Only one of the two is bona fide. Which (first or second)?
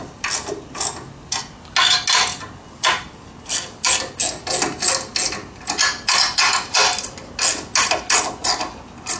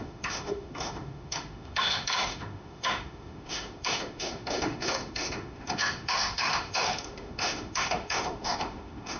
first